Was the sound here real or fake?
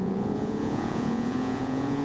fake